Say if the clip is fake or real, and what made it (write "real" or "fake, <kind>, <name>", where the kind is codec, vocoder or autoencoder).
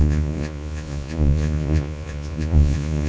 fake, vocoder, Vocos